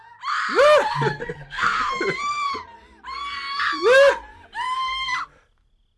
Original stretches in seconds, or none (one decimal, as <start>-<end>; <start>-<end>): 0.0-1.2; 1.8-6.0